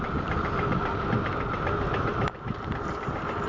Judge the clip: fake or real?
real